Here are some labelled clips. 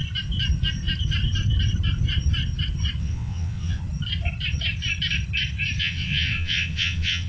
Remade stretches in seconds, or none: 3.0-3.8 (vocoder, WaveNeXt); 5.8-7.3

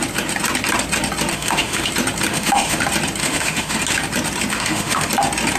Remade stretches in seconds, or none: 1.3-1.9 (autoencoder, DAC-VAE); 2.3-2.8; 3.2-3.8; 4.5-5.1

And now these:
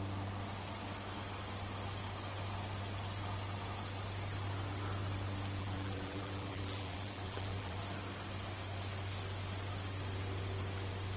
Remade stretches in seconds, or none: 5.6-7.8 (vocoder, BigVGAN v2)